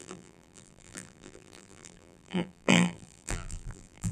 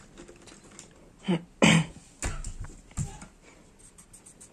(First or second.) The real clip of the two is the second